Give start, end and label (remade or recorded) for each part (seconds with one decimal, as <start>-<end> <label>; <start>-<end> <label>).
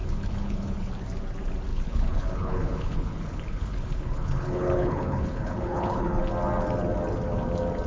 0.0-0.9 remade; 0.9-1.7 recorded; 1.7-6.2 remade; 6.2-7.9 recorded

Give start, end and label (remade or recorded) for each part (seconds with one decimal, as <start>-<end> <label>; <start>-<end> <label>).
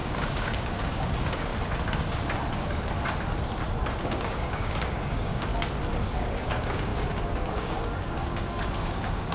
0.0-1.5 remade; 1.5-4.0 recorded; 4.0-5.5 remade; 5.5-6.1 recorded; 6.1-9.3 remade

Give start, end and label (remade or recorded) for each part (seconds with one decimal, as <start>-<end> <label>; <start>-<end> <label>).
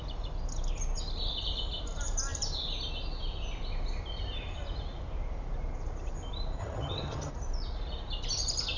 0.0-6.6 recorded; 6.6-7.3 remade; 7.3-8.8 recorded